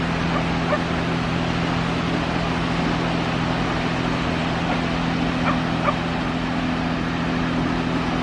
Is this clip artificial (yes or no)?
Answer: no